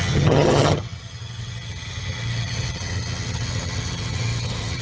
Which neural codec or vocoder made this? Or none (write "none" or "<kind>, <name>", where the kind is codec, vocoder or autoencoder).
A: vocoder, HiFi-GAN